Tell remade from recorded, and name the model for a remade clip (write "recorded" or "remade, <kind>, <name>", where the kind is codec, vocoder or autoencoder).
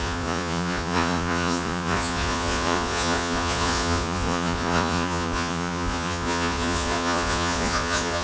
remade, vocoder, Vocos